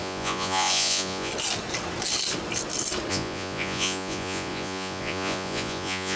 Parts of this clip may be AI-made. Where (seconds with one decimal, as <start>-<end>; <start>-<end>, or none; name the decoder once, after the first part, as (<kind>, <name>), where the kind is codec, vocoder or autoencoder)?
0.0-1.3 (vocoder, Vocos); 3.1-6.2